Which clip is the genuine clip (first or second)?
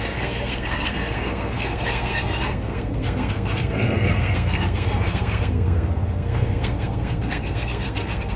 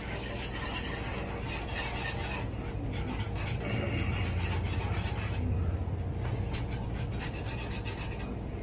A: second